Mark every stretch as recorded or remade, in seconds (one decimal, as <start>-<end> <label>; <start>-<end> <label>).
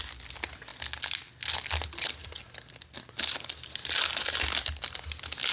0.0-5.5 recorded